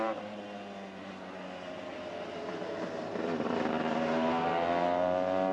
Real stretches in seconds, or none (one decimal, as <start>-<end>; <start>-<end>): 0.0-5.5